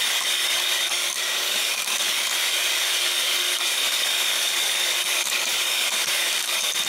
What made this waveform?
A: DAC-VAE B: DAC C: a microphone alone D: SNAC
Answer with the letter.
B